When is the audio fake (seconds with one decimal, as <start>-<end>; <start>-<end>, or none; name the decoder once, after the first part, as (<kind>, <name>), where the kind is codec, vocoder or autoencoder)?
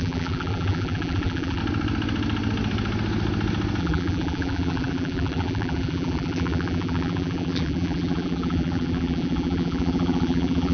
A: 0.0-1.6 (vocoder, BigVGAN v2); 3.8-10.7